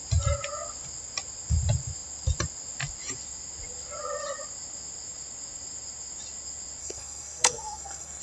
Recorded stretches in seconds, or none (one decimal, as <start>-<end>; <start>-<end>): 0.0-6.8